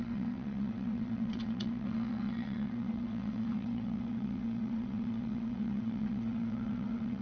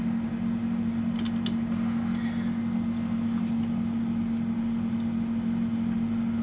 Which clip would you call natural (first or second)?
second